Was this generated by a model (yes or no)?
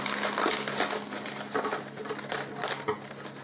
no